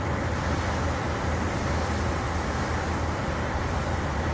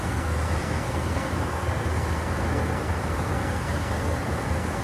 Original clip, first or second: first